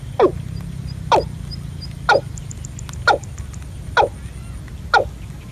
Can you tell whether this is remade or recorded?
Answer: recorded